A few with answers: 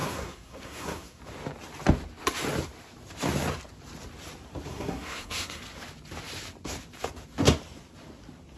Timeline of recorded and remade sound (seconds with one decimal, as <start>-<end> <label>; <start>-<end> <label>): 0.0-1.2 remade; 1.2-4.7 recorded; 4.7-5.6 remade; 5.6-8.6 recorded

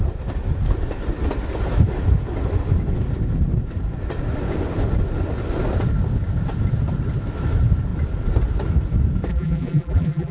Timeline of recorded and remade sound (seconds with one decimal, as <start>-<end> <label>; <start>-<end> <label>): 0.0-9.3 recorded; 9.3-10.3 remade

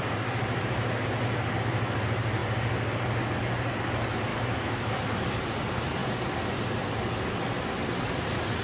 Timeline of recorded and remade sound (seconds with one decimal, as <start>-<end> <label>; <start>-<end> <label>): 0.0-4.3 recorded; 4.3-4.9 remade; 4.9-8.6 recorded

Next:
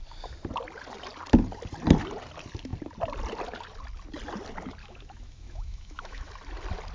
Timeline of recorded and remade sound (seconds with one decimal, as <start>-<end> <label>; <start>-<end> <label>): 0.0-4.8 recorded; 4.8-6.3 remade; 6.3-6.9 recorded

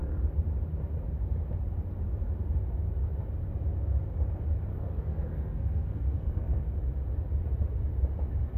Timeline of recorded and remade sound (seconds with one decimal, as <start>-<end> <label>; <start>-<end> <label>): 0.0-4.7 recorded; 4.7-6.6 remade; 6.6-8.6 recorded